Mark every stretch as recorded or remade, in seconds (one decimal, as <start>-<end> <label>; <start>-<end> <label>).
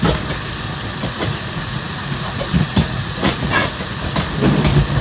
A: 0.0-1.0 recorded; 1.0-4.0 remade; 4.0-5.0 recorded